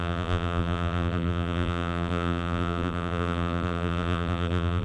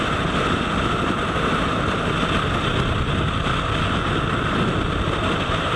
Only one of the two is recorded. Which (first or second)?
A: second